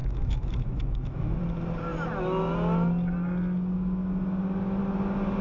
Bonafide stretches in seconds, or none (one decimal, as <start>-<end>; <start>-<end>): 1.4-5.4